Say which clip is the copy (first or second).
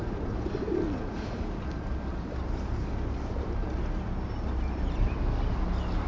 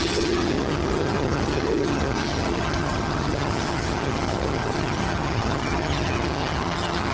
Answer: second